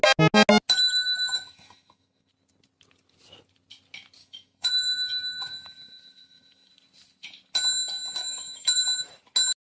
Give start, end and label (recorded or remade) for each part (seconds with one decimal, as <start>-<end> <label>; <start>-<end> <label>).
0.0-0.8 recorded; 0.8-2.3 remade; 2.3-4.2 recorded; 4.2-6.7 remade; 6.7-8.2 recorded; 8.2-8.8 remade; 8.8-9.7 recorded